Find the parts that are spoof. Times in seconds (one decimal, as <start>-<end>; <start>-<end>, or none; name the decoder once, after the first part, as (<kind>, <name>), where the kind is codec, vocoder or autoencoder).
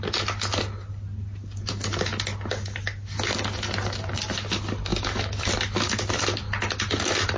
4.9-5.5 (autoencoder, DAC-VAE)